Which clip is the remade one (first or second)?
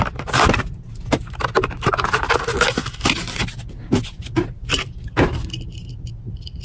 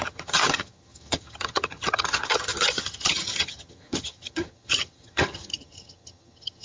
second